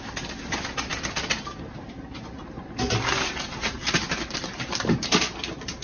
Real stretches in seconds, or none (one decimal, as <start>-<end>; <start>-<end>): 0.0-3.5